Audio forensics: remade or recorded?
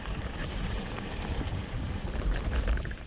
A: remade